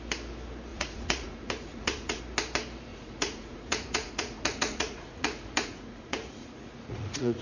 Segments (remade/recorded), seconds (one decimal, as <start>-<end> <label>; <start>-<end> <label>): 0.0-0.7 recorded; 0.7-2.2 remade; 2.2-2.9 recorded; 2.9-7.4 remade